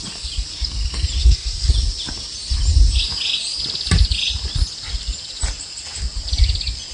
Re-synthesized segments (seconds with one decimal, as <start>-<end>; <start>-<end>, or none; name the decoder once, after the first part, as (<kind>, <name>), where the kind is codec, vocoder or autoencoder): 1.2-1.7 (codec, SNAC)